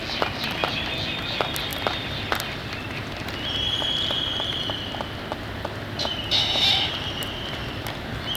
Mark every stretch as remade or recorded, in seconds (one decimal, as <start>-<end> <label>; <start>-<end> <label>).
0.0-8.4 recorded